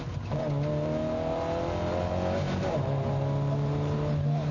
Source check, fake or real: real